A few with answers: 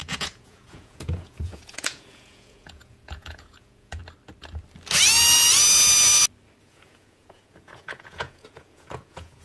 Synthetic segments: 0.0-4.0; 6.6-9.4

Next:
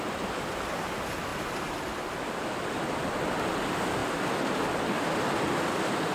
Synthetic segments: none

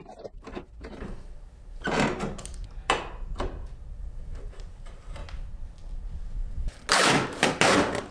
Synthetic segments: 0.0-2.5; 4.0-5.2; 6.9-8.1

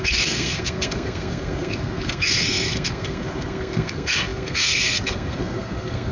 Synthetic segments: 0.0-6.1

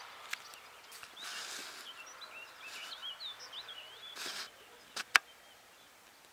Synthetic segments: none

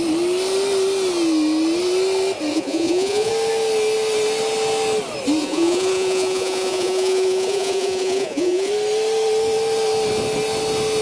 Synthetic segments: 2.5-3.3; 5.4-8.7

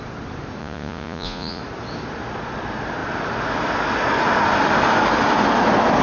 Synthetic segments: 0.6-1.6